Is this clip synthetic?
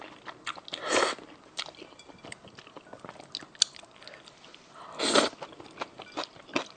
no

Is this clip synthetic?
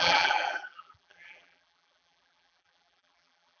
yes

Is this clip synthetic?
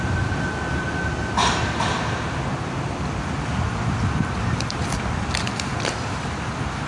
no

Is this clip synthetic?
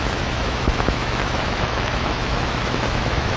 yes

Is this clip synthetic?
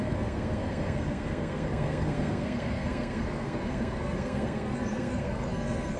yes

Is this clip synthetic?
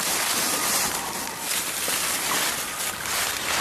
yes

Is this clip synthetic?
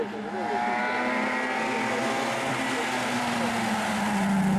no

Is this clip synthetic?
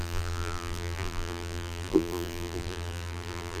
yes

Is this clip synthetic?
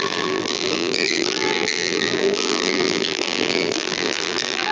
yes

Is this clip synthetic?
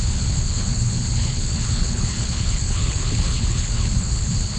yes